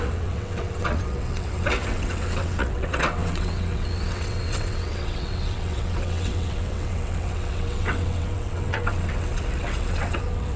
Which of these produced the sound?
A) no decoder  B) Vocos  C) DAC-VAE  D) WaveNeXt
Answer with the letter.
D